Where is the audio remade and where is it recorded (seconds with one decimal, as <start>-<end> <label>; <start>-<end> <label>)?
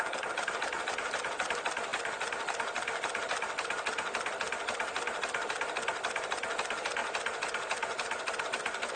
0.0-9.0 recorded